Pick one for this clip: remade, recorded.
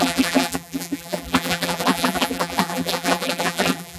remade